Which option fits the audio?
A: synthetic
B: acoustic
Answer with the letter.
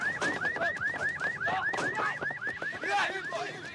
B